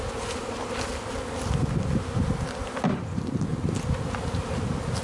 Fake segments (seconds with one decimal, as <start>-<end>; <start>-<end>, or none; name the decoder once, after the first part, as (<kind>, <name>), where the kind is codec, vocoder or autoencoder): none